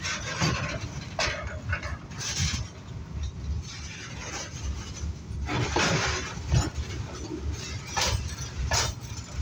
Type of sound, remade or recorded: recorded